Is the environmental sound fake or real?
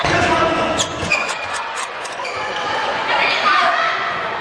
fake